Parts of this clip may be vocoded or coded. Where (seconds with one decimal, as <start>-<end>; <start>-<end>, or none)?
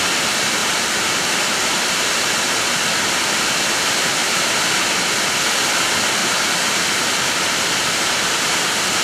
0.6-2.5; 4.2-4.8; 6.2-7.2